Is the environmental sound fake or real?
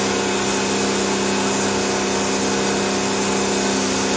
real